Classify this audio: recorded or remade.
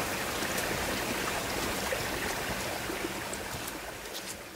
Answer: recorded